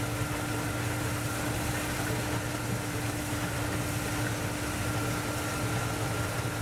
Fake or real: real